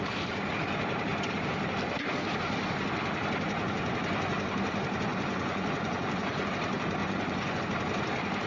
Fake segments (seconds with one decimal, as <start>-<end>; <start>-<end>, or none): 5.1-6.5; 7.0-7.6